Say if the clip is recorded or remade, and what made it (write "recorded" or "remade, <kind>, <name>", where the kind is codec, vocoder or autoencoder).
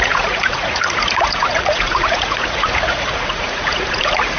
remade, vocoder, Vocos